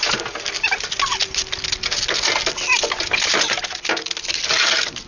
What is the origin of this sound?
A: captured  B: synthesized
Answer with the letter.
A